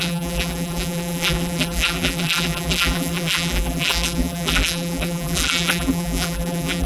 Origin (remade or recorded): remade